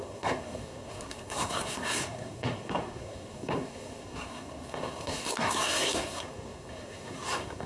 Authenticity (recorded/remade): remade